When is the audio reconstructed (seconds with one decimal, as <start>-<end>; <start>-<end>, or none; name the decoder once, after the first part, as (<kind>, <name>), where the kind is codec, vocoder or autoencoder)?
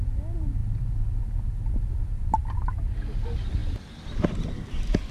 none